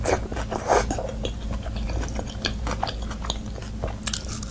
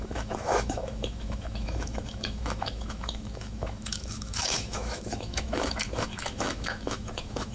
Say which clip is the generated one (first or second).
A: second